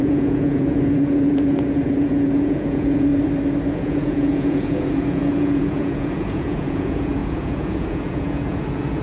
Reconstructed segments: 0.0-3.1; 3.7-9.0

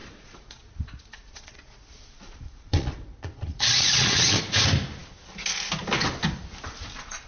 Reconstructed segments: 0.0-4.4

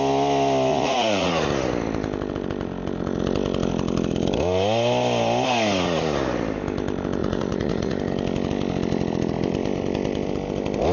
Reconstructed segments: 0.7-1.3; 7.2-8.0

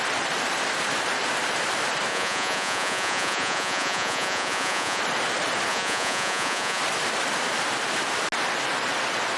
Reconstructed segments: 2.1-5.0; 5.7-6.8

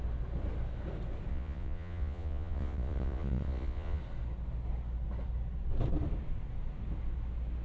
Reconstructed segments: 1.3-4.0

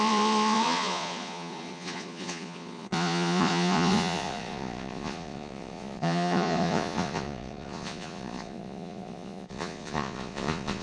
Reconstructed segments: 0.0-10.8

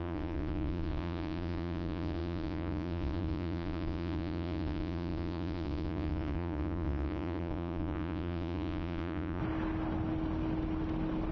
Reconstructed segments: 0.0-9.4

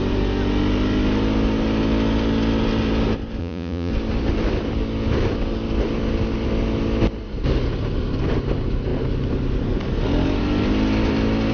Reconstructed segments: 3.4-3.9